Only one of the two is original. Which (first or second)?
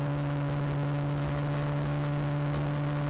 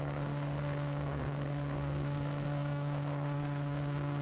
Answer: first